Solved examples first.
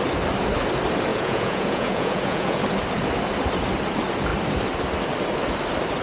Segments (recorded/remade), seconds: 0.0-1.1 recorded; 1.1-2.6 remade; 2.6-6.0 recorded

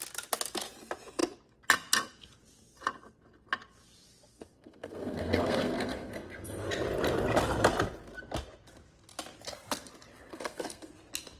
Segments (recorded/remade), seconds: 0.0-4.3 recorded; 4.3-6.7 remade; 6.7-10.3 recorded; 10.3-10.9 remade; 10.9-11.4 recorded

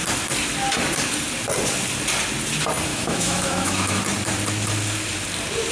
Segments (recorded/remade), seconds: 0.0-2.9 recorded; 2.9-4.0 remade; 4.0-5.7 recorded

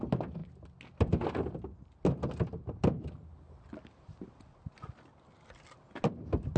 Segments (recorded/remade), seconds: 0.0-6.6 recorded

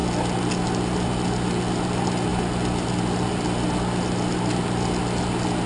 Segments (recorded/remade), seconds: 0.0-5.7 recorded